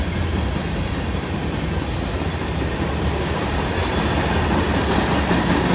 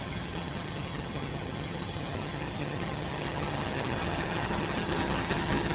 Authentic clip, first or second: first